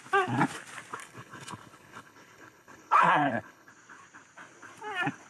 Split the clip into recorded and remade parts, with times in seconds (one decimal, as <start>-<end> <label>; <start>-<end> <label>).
0.0-1.0 recorded; 1.0-3.7 remade; 3.7-5.3 recorded